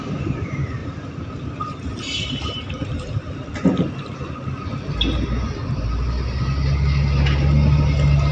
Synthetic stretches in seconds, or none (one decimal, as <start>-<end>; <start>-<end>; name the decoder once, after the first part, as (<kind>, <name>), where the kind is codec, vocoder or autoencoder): 0.8-3.3 (vocoder, BigVGAN v2)